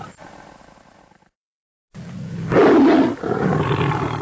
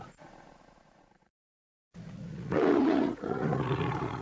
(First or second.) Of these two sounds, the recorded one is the first